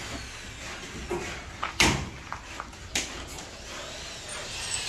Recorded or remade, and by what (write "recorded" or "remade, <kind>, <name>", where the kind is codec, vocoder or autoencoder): recorded